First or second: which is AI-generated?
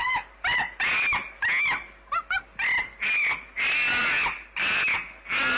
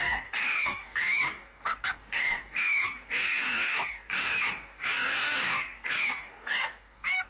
second